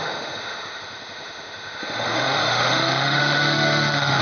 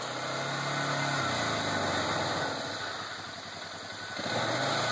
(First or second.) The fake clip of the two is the first